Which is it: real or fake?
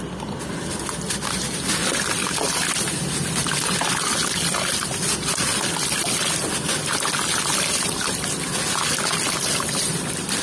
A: real